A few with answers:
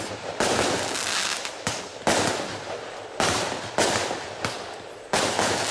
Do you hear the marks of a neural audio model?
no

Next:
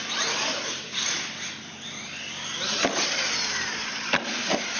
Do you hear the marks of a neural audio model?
no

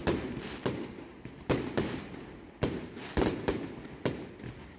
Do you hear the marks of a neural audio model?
no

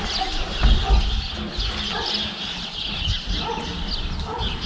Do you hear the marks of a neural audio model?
no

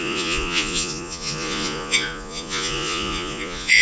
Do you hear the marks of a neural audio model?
yes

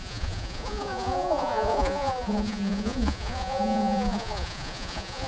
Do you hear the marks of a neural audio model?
yes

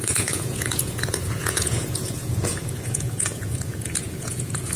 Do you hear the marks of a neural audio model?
yes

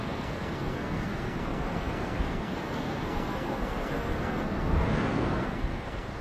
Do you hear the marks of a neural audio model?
yes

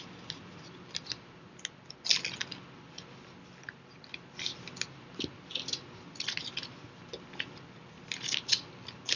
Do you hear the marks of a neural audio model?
no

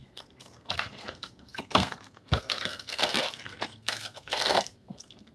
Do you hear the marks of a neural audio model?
yes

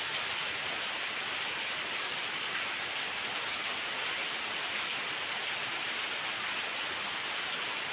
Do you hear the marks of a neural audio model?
no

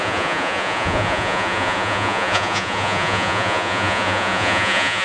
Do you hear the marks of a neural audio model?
yes